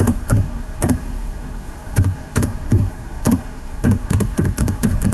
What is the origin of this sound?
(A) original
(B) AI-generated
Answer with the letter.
B